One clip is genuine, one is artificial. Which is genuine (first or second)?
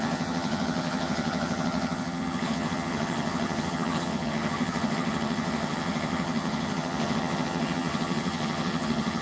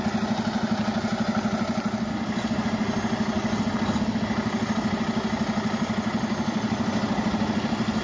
second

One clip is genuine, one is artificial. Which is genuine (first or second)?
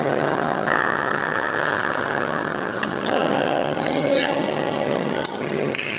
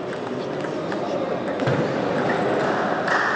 second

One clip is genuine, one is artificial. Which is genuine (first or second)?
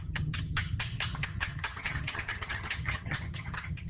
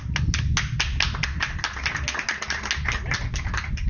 second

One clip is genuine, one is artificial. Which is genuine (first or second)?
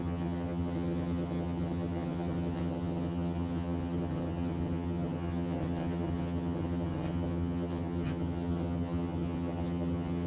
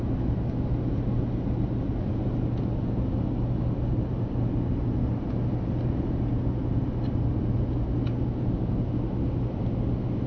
second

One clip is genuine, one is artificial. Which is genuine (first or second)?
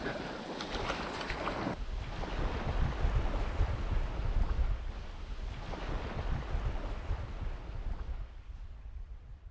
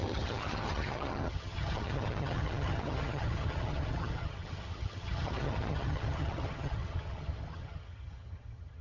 first